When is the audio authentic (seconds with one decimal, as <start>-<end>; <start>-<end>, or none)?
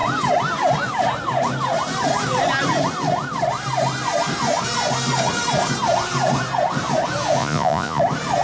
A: 0.0-7.4; 8.0-8.4